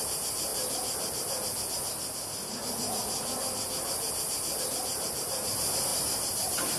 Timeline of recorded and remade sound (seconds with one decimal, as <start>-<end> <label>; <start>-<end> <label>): 0.0-0.5 remade; 0.5-4.6 recorded; 4.6-6.8 remade